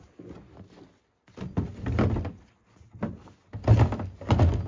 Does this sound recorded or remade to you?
recorded